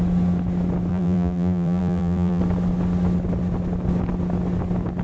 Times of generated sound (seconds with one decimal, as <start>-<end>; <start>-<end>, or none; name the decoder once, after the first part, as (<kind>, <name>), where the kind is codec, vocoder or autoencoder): 0.9-2.4 (vocoder, BigVGAN v2)